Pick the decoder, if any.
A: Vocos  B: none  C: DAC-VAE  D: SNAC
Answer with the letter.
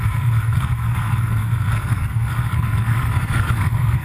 D